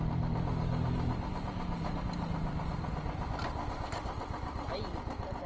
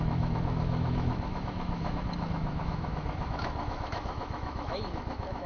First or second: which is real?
first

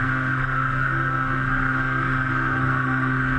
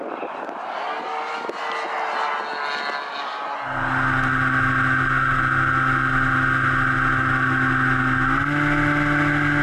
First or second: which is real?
second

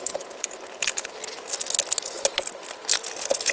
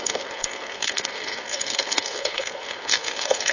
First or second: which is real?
first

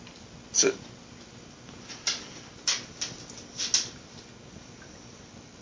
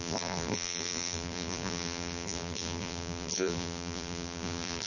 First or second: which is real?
first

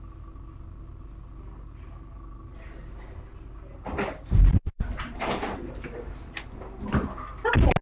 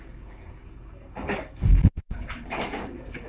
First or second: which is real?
first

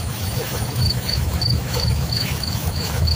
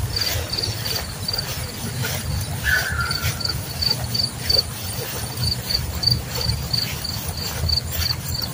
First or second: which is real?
second